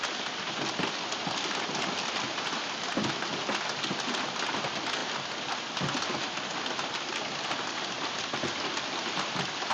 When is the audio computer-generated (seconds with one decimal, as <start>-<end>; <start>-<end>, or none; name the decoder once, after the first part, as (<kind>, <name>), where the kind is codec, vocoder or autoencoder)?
none